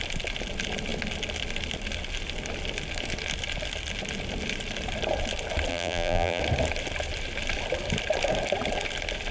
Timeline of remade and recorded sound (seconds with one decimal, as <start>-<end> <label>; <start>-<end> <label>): 0.0-5.7 recorded; 5.7-6.4 remade; 6.4-9.3 recorded